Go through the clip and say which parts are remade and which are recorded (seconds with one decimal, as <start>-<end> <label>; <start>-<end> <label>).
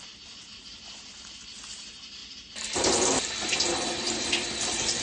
0.0-5.0 recorded